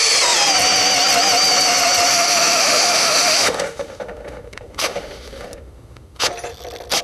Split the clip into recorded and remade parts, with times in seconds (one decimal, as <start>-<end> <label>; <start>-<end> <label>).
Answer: 0.0-2.1 recorded; 2.1-6.3 remade; 6.3-7.0 recorded